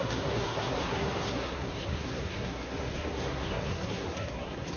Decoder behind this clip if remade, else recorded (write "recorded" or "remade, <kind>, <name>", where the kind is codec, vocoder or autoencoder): remade, codec, SNAC